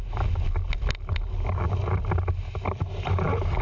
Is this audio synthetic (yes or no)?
no